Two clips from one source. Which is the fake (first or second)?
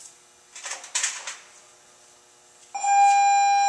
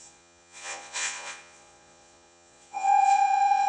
second